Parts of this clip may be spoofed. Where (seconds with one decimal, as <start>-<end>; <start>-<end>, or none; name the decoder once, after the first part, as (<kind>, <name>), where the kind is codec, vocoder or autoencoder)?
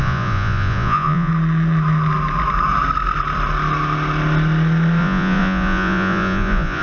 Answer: 0.0-1.3 (vocoder, Vocos); 5.0-6.8